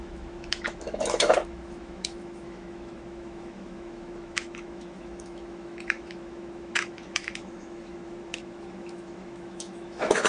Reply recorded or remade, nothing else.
remade